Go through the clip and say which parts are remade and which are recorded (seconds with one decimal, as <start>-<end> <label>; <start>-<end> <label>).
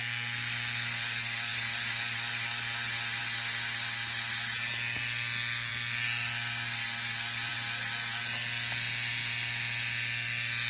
0.0-10.7 recorded